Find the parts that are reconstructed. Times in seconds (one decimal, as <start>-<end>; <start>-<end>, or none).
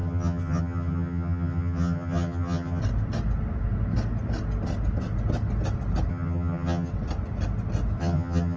0.0-2.8; 6.1-6.9; 8.0-8.6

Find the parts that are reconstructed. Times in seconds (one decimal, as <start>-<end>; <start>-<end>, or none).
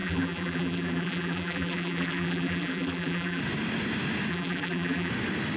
0.0-3.4; 4.3-5.1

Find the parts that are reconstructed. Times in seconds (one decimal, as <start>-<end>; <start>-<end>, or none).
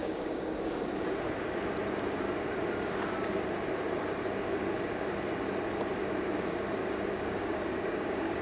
0.0-0.8; 6.8-8.4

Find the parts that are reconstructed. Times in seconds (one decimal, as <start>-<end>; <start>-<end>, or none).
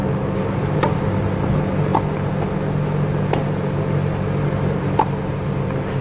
none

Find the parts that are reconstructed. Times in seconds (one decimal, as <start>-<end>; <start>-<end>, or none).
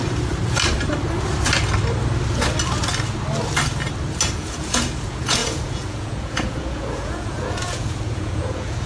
4.3-8.9